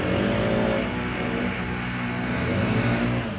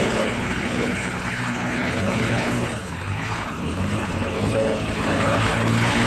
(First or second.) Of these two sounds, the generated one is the second